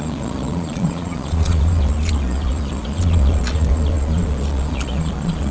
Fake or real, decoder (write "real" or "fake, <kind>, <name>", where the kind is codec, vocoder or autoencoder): fake, vocoder, Vocos